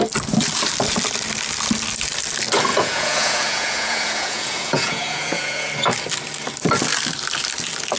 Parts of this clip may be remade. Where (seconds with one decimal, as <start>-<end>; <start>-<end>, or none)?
2.7-5.7